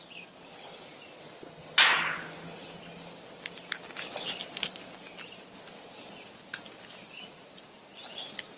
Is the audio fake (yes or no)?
no